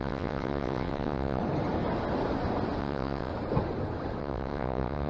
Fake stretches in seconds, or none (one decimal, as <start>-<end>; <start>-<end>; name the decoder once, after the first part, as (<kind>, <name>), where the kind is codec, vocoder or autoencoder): 0.0-1.4 (vocoder, WaveNeXt); 2.8-3.3; 4.2-5.1